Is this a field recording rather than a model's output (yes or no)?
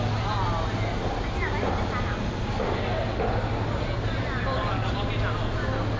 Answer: yes